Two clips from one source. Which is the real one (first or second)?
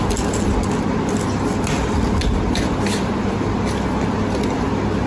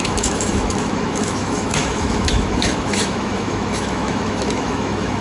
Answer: first